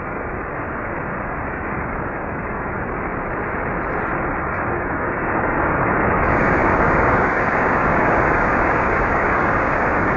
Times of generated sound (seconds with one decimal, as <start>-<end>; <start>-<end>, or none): 0.0-3.1; 4.4-10.2